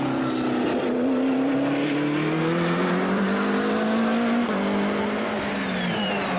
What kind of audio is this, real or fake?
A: real